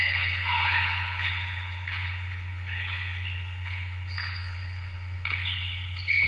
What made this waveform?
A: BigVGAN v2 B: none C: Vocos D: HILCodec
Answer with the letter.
D